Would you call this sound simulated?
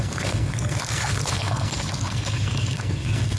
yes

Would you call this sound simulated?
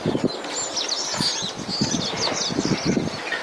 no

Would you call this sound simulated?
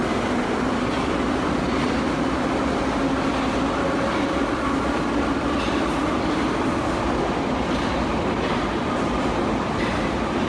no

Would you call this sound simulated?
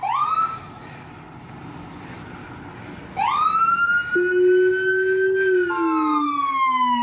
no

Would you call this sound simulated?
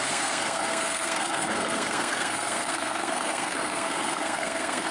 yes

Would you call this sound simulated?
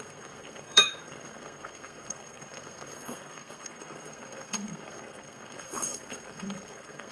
yes